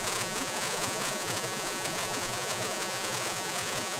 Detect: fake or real fake